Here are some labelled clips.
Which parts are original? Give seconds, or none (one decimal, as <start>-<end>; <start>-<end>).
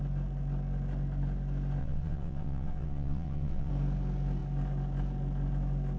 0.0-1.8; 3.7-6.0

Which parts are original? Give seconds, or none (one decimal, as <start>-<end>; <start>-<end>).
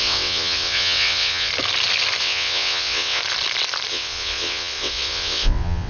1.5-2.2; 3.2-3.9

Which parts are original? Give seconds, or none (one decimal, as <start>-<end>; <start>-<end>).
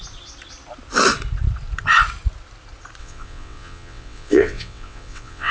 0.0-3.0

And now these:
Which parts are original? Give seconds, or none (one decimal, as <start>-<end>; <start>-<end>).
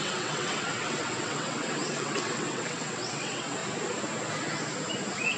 3.6-5.4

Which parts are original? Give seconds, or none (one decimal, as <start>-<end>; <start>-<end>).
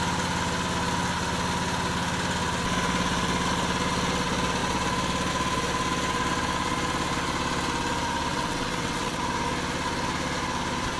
0.0-8.3; 9.2-11.0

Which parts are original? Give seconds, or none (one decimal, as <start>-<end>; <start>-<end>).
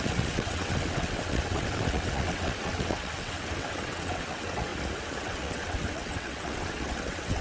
4.7-5.2